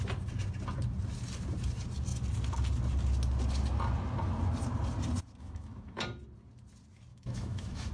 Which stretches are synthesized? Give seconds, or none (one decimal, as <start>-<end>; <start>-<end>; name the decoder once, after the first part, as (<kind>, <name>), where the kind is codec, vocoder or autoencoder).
5.4-6.0 (autoencoder, DAC-VAE); 7.1-7.9

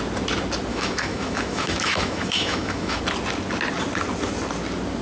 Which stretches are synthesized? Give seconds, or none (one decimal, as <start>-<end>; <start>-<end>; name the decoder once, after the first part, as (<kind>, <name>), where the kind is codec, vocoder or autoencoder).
0.7-3.0 (autoencoder, DAC-VAE)

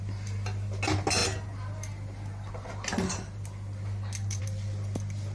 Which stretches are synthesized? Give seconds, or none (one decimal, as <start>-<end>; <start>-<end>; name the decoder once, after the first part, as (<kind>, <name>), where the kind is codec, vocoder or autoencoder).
none

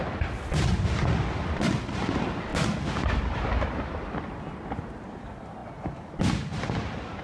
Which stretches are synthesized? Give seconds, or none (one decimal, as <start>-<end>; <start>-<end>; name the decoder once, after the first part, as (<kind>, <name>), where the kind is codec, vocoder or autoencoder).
none

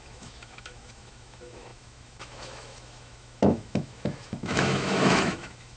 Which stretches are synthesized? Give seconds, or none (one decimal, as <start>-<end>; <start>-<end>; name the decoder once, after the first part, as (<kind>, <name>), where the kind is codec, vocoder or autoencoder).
0.0-5.8 (autoencoder, DAC-VAE)

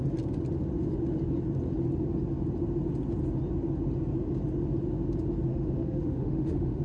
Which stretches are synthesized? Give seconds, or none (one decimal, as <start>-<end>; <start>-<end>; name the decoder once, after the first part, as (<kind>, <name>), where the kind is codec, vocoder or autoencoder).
5.5-6.8 (autoencoder, DAC-VAE)